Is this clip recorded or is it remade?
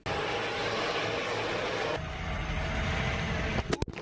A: recorded